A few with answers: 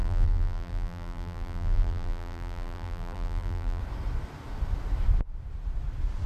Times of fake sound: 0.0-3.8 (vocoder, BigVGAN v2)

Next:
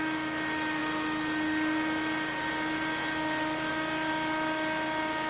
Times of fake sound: none

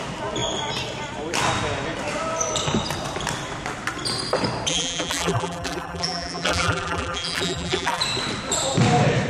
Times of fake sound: 4.7-8.0 (vocoder, BigVGAN v2)

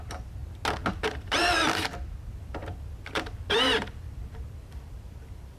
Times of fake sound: 0.0-0.4 (vocoder, BigVGAN v2); 0.9-5.6

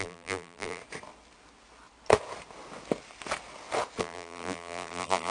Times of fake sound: 0.0-0.8 (vocoder, BigVGAN v2); 4.0-5.3

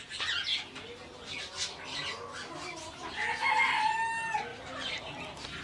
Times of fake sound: 4.5-5.0 (vocoder, BigVGAN v2)